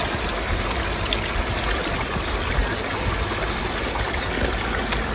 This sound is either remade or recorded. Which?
recorded